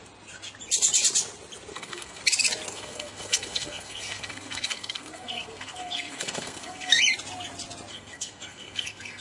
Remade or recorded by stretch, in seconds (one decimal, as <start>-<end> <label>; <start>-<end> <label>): 0.0-1.7 recorded; 1.7-2.2 remade; 2.2-2.7 recorded; 2.7-7.0 remade; 7.0-7.9 recorded; 7.9-9.2 remade